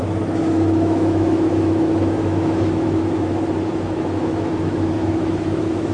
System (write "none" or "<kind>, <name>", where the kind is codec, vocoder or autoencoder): autoencoder, DAC-VAE